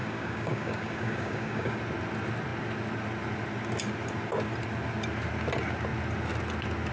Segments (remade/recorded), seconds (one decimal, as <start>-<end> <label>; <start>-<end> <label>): 0.0-1.8 remade; 1.8-6.9 recorded